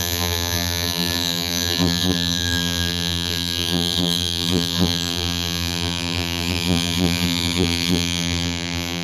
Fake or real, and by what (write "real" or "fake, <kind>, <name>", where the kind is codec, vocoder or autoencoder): fake, vocoder, BigVGAN v2